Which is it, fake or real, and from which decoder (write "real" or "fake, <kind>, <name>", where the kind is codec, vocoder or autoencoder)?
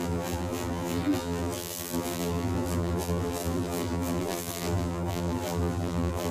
fake, vocoder, BigVGAN v2